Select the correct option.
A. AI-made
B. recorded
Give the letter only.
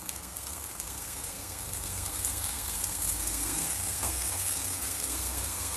A